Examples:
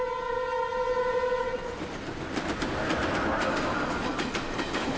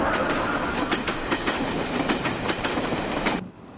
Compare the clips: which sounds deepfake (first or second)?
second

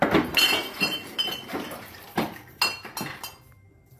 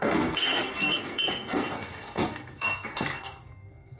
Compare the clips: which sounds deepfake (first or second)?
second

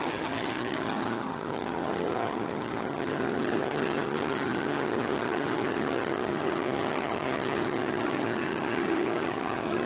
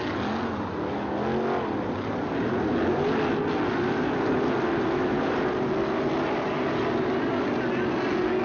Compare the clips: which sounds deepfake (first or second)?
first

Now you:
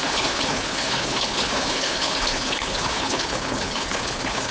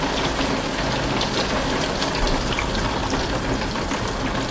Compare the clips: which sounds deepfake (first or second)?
first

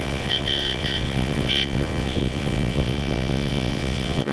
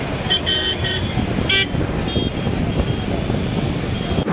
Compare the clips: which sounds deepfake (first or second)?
first